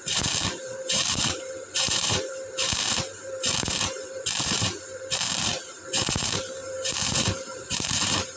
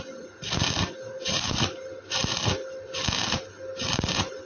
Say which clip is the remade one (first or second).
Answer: first